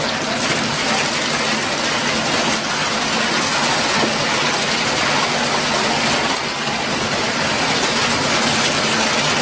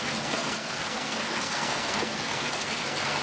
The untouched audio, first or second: first